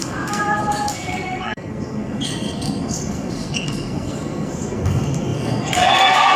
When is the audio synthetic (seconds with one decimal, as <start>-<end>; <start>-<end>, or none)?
0.0-6.4